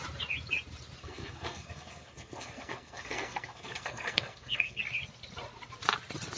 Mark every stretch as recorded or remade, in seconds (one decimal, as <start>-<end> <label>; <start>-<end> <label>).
0.0-1.0 recorded; 1.0-4.8 remade; 4.8-6.4 recorded